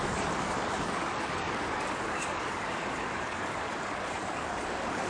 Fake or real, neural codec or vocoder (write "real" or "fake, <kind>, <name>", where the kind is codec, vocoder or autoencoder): fake, codec, DAC